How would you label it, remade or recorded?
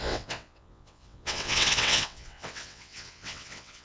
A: remade